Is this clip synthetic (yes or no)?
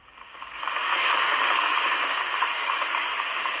yes